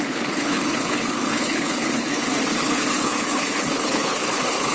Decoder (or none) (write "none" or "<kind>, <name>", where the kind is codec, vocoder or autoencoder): codec, HILCodec